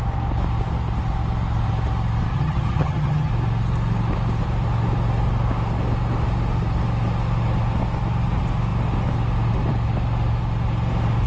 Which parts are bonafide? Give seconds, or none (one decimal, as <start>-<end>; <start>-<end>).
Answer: 0.0-2.3; 3.3-11.3